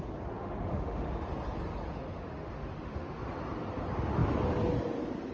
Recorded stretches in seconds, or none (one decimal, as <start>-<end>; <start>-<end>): 0.0-0.4; 1.1-1.9; 3.2-5.3